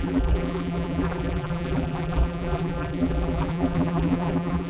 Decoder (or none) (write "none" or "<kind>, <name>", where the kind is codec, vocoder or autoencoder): vocoder, BigVGAN v2